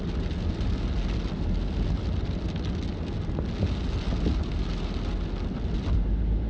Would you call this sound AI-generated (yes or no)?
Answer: no